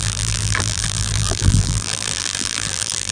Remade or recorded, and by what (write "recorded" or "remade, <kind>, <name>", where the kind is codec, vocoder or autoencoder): remade, vocoder, BigVGAN v2